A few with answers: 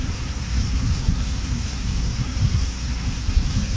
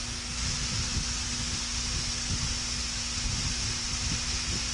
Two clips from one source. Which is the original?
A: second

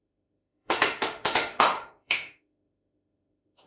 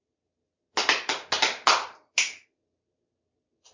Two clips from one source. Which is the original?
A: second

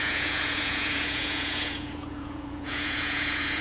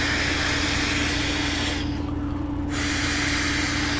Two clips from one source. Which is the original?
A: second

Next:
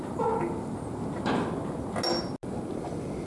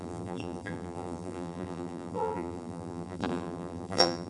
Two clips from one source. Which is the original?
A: first